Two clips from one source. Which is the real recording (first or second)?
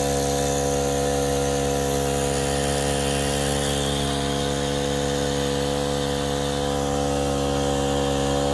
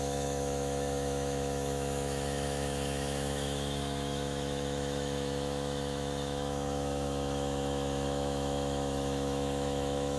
first